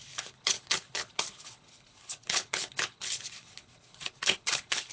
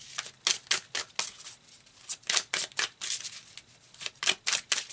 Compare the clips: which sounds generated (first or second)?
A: first